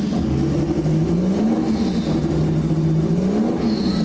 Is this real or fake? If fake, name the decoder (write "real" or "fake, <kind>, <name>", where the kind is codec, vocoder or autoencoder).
real